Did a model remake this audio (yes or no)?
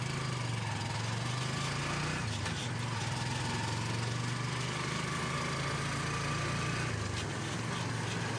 no